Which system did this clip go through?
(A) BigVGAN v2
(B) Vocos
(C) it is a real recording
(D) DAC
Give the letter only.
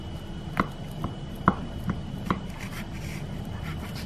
C